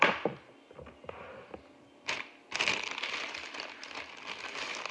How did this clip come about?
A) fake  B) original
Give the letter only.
B